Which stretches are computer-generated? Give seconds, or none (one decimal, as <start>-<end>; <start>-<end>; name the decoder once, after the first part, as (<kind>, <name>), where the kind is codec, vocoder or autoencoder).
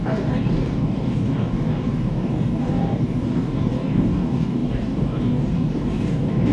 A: 0.0-6.5 (codec, DAC)